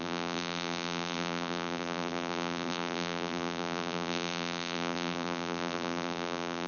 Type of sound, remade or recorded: remade